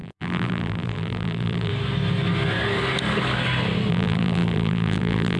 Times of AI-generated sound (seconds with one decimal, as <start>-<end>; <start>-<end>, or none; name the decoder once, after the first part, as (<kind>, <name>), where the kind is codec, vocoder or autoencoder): 0.0-1.7 (vocoder, BigVGAN v2); 3.9-5.4